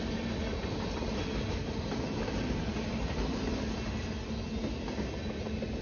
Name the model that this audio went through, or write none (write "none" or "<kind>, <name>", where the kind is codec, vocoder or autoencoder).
none